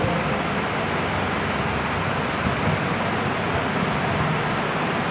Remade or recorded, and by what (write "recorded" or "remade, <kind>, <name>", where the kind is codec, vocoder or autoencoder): recorded